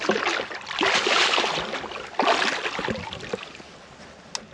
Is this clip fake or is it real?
real